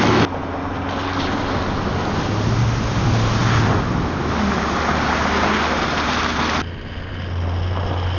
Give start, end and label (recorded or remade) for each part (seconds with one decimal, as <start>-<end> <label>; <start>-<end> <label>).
0.0-8.2 recorded